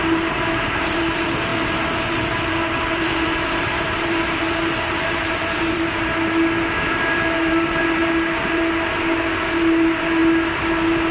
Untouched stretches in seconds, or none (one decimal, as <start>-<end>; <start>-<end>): 10.2-10.7